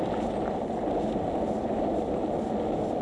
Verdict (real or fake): real